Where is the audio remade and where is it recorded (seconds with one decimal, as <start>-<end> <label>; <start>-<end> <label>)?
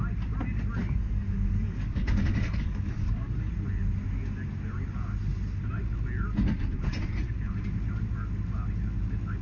0.0-0.8 recorded; 0.8-3.5 remade; 3.5-9.4 recorded